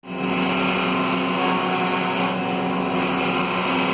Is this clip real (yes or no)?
yes